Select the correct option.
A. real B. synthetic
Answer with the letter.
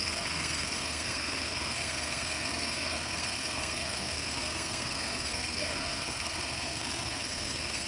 B